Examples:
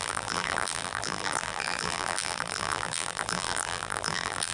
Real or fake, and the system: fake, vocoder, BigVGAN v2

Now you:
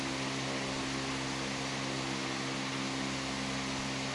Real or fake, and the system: real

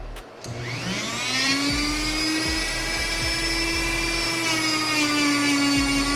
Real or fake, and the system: real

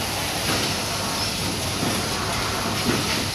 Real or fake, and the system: real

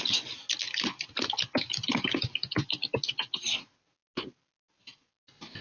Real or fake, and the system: real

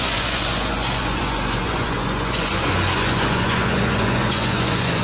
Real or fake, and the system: fake, vocoder, Vocos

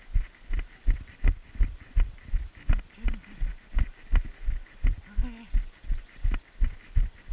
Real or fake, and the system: real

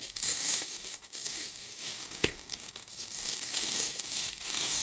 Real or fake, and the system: fake, codec, DAC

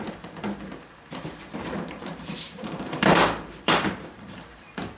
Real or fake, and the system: fake, vocoder, BigVGAN v2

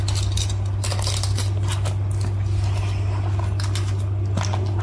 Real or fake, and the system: real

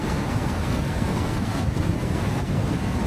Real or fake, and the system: fake, codec, SNAC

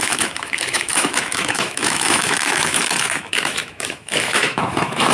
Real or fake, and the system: fake, autoencoder, DAC-VAE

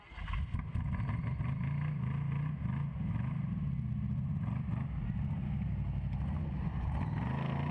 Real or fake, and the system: real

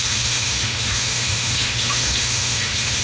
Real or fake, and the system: fake, autoencoder, DAC-VAE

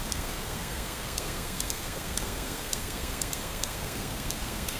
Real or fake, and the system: fake, codec, SNAC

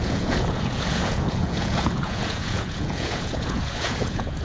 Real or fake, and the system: fake, vocoder, Vocos